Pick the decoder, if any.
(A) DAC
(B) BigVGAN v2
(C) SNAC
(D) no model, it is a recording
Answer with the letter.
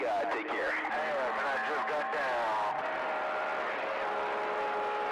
D